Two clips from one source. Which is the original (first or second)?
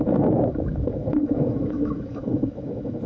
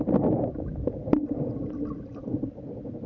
second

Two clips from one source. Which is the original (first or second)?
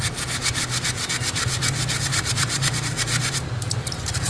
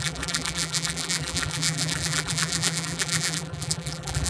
first